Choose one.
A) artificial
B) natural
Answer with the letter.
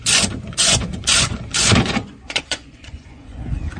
A